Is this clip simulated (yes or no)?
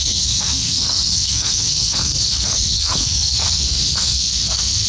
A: yes